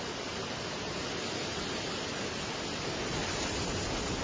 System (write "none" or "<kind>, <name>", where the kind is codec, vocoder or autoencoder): none